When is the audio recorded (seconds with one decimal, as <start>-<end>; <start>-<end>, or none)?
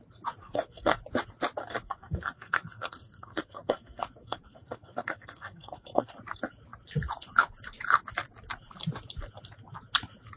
0.0-0.4; 1.0-1.6; 6.1-10.4